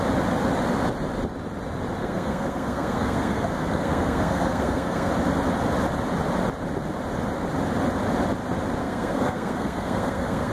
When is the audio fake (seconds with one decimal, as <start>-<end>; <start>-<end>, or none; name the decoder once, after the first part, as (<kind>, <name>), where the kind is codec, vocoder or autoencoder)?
2.0-5.1 (codec, SNAC); 8.8-10.5